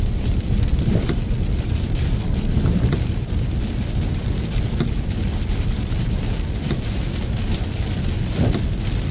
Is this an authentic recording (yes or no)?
no